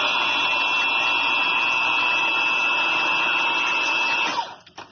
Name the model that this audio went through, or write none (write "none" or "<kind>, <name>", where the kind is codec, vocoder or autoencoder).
none